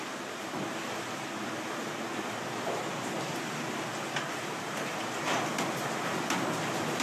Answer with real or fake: real